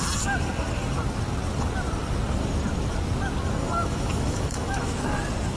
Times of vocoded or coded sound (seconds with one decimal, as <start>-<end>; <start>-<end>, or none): 3.6-5.0